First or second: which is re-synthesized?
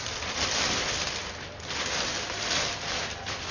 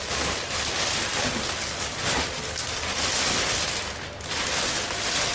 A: first